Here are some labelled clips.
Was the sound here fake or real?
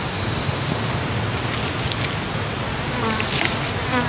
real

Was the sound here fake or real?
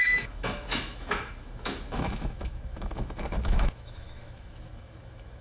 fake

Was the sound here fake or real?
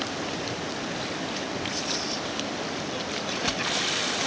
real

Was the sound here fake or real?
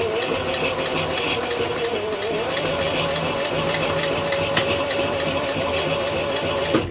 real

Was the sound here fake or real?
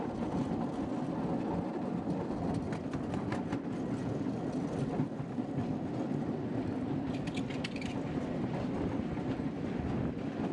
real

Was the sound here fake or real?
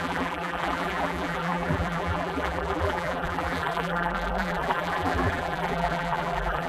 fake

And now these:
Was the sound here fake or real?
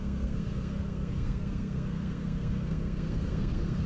fake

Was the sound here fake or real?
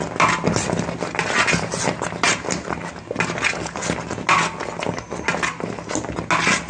real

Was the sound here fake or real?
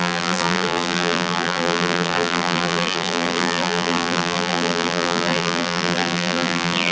fake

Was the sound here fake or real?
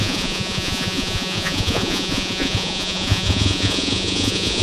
fake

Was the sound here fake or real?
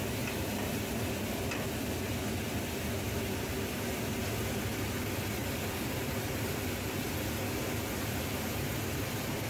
real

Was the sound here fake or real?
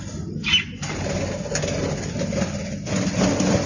real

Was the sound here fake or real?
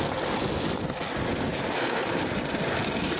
real